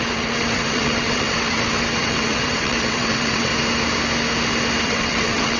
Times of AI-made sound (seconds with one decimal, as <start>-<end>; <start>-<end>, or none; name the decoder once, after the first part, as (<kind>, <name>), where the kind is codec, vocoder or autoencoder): 0.0-3.5 (vocoder, WaveNeXt); 4.8-5.6